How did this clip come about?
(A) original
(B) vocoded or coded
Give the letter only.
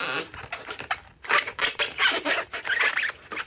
B